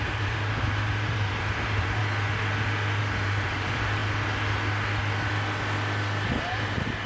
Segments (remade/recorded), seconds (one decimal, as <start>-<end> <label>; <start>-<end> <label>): 0.0-2.0 remade; 2.0-3.0 recorded; 3.0-4.0 remade; 4.0-6.4 recorded; 6.4-7.1 remade